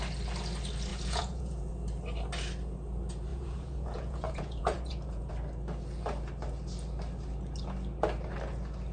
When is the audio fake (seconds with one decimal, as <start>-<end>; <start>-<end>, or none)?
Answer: 0.9-1.7; 3.3-5.3